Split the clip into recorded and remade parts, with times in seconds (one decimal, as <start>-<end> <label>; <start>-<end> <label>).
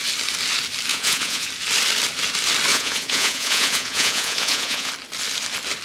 0.0-0.9 recorded; 0.9-1.5 remade; 1.5-2.7 recorded; 2.7-4.9 remade; 4.9-5.8 recorded